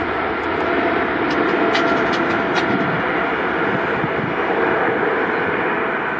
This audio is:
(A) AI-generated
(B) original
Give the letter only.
B